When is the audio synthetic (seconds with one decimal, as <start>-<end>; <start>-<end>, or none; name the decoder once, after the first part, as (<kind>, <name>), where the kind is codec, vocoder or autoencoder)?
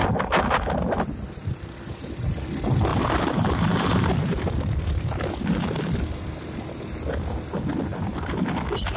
2.9-4.4 (vocoder, BigVGAN v2); 7.9-8.5